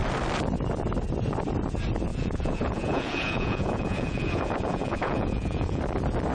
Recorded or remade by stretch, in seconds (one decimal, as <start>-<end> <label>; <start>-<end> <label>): 0.0-2.1 recorded; 2.1-5.8 remade; 5.8-6.3 recorded